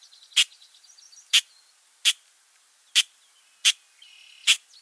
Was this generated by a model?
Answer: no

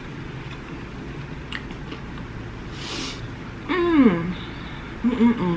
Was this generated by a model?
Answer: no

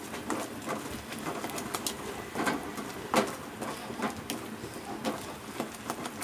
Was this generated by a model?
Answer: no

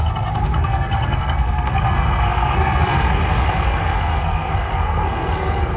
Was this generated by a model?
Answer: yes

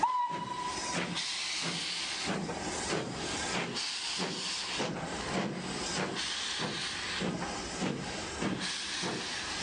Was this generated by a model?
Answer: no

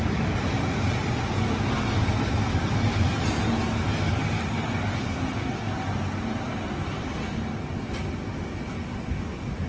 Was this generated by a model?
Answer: no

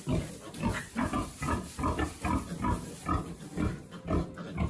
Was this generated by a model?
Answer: no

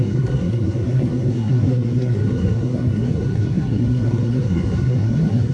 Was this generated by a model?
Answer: yes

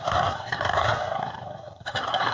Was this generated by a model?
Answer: yes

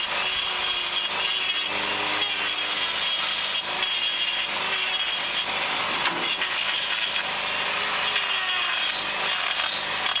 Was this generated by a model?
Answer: no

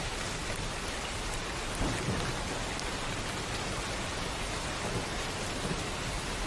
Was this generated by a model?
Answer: no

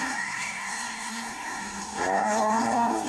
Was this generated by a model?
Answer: yes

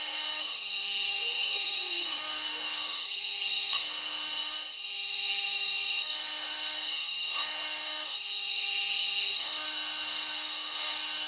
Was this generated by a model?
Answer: yes